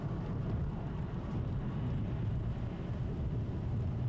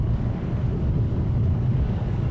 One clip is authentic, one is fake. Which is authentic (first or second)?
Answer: first